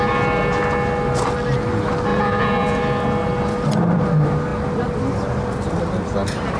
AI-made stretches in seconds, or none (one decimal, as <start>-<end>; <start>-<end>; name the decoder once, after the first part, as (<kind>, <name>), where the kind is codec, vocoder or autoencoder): 2.1-2.8 (vocoder, Vocos)